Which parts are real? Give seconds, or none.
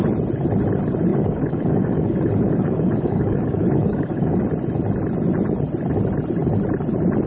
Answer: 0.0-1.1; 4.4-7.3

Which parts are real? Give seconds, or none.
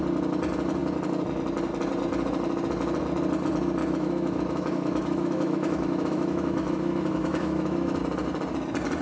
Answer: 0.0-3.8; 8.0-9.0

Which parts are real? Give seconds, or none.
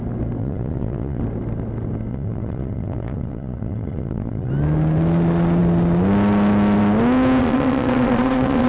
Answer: 0.0-0.4; 1.2-2.1; 4.5-7.4